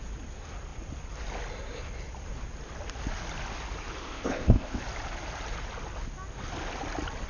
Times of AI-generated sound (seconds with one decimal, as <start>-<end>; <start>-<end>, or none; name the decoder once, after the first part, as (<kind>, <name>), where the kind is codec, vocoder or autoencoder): 4.0-4.8 (codec, ZipCodec)